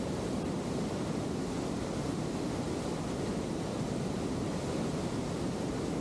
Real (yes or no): yes